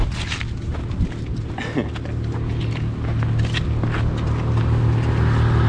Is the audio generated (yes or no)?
no